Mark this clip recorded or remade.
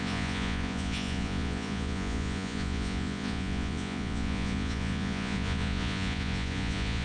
remade